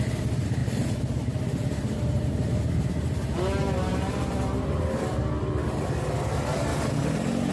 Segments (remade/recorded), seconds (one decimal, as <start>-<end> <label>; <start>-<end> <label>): 0.0-0.6 recorded; 0.6-2.9 remade; 2.9-3.9 recorded; 3.9-5.8 remade; 5.8-7.5 recorded